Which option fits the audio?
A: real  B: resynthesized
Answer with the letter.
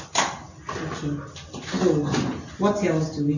A